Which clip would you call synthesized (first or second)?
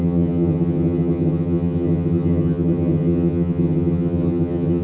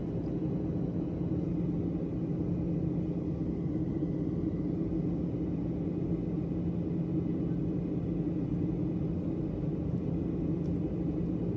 first